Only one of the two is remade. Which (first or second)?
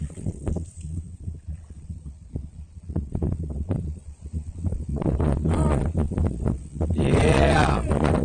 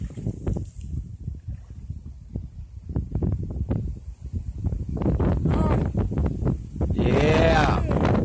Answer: first